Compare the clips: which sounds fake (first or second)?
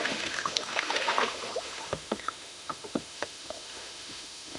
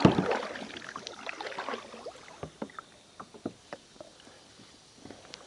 first